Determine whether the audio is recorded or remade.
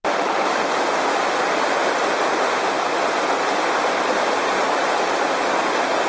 recorded